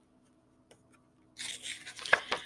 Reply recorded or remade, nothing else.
recorded